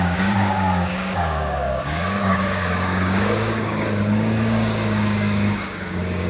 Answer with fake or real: fake